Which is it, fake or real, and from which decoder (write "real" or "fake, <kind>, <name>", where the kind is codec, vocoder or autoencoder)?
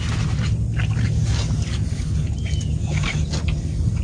real